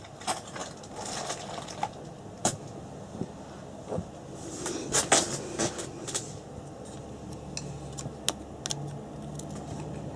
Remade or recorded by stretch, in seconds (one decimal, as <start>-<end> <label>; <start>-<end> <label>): 0.0-10.2 recorded